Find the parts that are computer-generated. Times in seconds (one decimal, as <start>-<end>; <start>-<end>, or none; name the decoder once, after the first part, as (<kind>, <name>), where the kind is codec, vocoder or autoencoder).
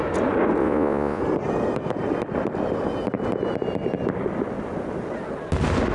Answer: 0.6-1.2 (vocoder, Vocos)